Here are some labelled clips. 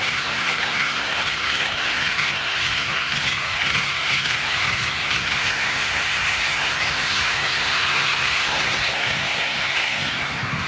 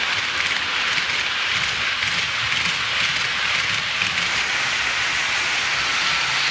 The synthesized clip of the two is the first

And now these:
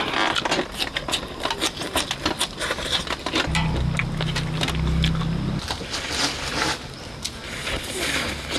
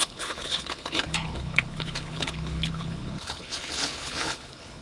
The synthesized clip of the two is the second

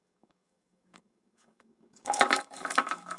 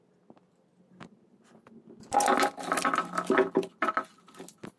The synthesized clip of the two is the first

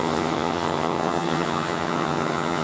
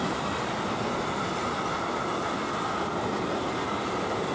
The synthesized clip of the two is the first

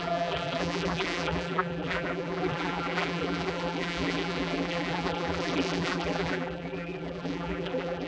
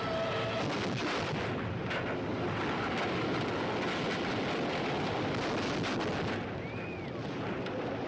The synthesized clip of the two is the first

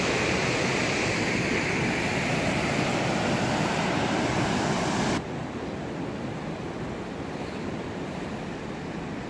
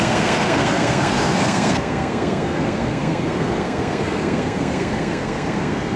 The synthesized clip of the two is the second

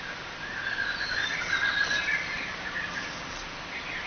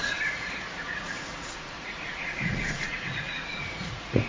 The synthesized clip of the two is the second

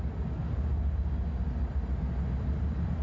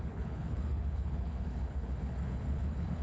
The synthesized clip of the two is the second